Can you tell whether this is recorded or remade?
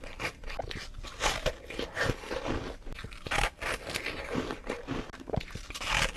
recorded